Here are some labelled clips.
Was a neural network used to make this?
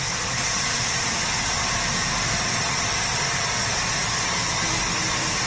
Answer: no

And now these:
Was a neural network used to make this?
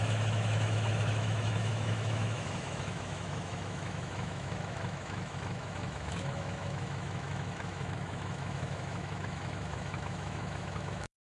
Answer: yes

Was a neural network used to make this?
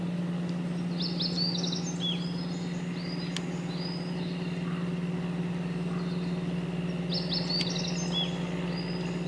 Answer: no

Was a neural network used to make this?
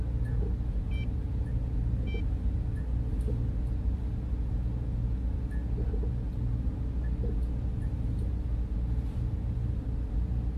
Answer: no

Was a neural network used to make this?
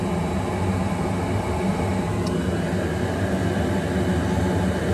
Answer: no